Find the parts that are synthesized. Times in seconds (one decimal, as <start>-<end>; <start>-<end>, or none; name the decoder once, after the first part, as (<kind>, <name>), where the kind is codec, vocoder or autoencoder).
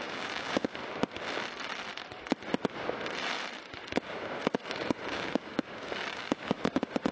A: 0.0-0.8 (codec, DAC); 4.0-7.1